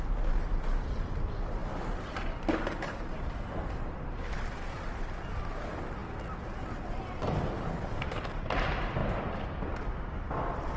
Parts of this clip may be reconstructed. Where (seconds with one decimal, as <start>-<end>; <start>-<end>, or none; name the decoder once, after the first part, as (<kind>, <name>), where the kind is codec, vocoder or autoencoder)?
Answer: none